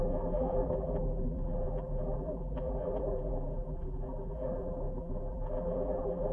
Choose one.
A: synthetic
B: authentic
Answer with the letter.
A